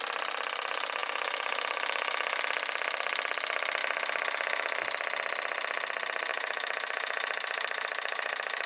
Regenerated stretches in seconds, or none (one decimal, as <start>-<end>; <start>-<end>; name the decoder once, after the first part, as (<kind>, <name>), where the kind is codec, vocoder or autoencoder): 1.0-2.4 (autoencoder, DAC-VAE); 3.8-4.8; 6.3-8.7